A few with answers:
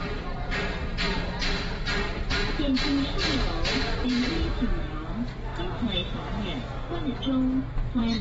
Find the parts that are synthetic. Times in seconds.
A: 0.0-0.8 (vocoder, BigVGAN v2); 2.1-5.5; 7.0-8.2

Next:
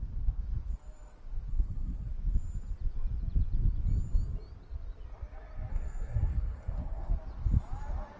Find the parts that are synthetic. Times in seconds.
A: 1.5-2.1 (codec, SNAC); 5.7-7.1

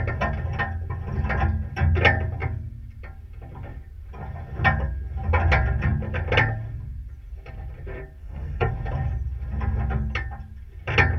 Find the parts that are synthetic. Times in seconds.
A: 8.2-8.7 (codec, SNAC)

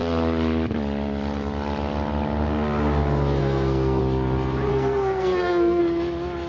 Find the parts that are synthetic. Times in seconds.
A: 3.4-4.0 (codec, SNAC); 4.7-5.8

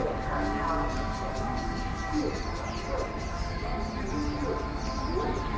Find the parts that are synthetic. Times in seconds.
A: 0.0-2.2 (codec, DAC); 3.3-3.7

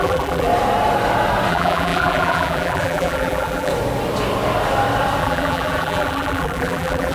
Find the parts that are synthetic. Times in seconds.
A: 0.0-0.5 (vocoder, BigVGAN v2); 1.5-3.7; 5.2-7.1